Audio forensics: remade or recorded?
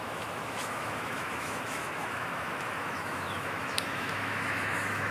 remade